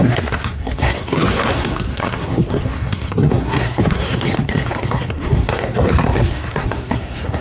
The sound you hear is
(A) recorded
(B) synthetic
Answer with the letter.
B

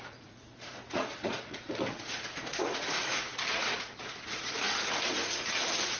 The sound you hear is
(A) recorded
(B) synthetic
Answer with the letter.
B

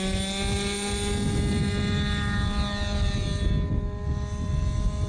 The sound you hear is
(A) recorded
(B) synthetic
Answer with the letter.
A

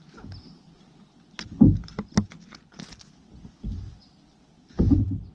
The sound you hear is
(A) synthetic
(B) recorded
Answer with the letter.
B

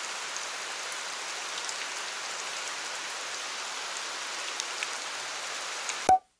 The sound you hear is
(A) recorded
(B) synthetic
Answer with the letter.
A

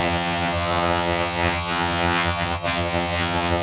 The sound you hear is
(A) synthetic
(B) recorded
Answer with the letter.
A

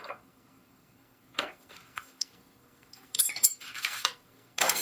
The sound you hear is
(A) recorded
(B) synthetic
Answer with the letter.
B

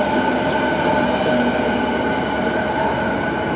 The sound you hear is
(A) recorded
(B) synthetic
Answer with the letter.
A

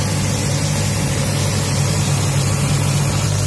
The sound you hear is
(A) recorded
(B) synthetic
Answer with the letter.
A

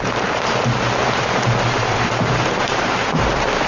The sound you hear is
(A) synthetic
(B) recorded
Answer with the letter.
A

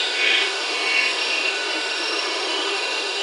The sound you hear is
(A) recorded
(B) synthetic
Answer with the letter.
B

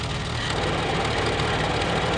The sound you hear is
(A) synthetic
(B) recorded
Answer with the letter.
B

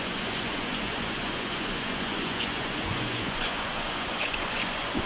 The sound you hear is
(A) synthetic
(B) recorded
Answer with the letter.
A